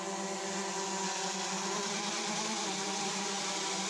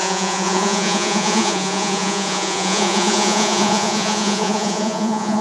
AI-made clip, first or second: second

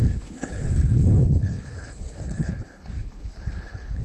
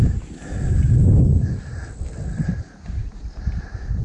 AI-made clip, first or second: first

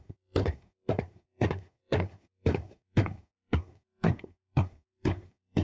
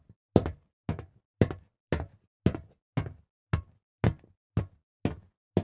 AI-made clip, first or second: first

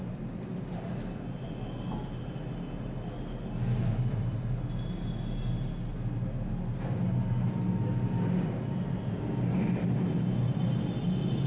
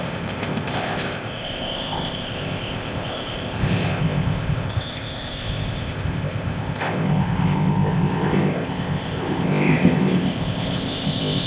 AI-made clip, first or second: second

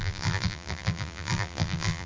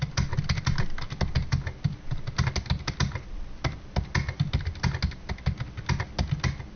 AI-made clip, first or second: first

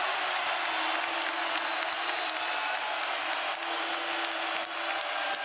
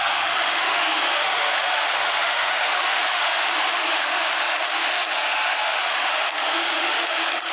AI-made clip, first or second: second